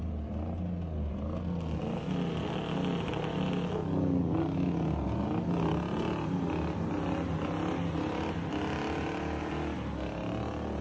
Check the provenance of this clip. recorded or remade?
recorded